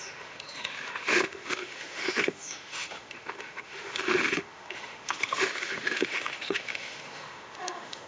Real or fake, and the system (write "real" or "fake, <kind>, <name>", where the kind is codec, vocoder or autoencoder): fake, autoencoder, DAC-VAE